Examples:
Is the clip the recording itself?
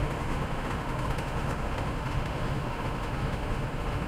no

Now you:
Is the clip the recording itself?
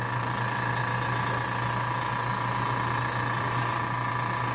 yes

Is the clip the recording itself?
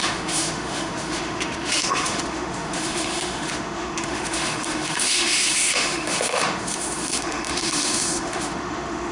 no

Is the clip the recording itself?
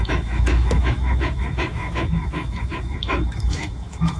no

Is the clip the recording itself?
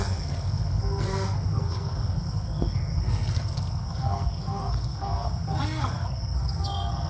no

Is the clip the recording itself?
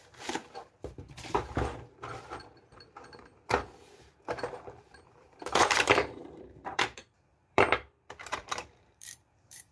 no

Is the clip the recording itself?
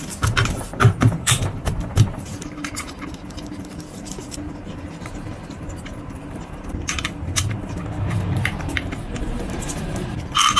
no